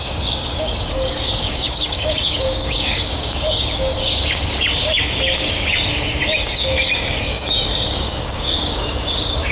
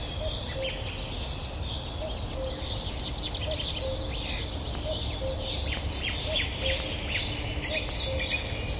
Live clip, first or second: second